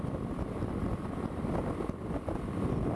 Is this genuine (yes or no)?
yes